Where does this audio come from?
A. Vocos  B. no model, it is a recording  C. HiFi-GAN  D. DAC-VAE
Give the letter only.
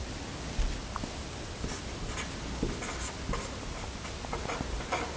B